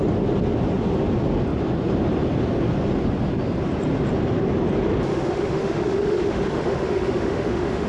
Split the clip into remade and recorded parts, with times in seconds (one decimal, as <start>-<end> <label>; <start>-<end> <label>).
0.0-5.1 recorded; 5.1-7.9 remade